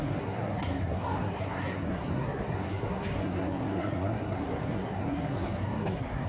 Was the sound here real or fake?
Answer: fake